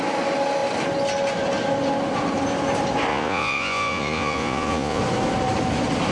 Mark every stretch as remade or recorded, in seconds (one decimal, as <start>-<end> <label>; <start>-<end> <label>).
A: 0.0-3.1 recorded; 3.1-5.0 remade; 5.0-6.1 recorded

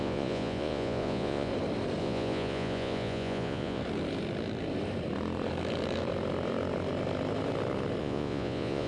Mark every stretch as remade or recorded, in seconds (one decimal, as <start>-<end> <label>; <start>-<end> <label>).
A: 0.0-1.5 remade; 1.5-2.0 recorded; 2.0-3.8 remade; 3.8-8.0 recorded; 8.0-8.9 remade

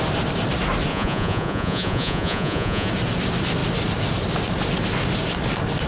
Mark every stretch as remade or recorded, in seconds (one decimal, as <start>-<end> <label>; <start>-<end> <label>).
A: 0.0-0.9 recorded; 0.9-2.9 remade; 2.9-5.9 recorded

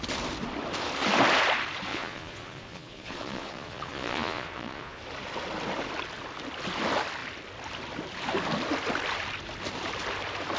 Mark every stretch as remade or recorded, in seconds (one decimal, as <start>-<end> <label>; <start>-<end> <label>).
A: 0.0-1.9 recorded; 1.9-5.0 remade; 5.0-10.6 recorded

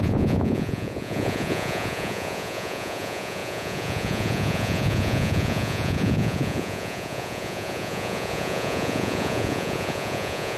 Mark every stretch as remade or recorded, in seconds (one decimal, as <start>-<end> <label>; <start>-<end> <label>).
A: 0.0-10.6 remade

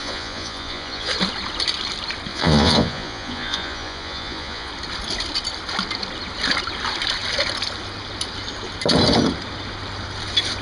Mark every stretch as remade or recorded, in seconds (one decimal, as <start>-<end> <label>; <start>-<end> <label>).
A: 0.0-1.1 remade; 1.1-2.3 recorded; 2.3-4.7 remade; 4.7-10.6 recorded